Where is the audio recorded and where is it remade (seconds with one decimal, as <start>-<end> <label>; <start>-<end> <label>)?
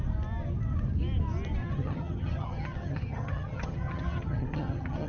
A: 0.0-1.6 recorded; 1.6-5.1 remade